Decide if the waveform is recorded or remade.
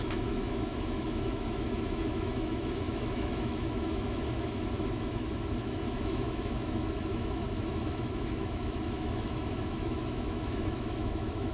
remade